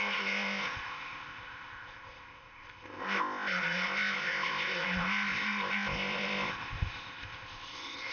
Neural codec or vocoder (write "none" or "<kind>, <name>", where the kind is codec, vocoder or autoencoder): codec, ZipCodec